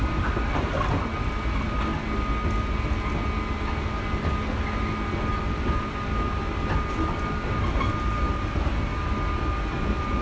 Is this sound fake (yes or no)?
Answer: no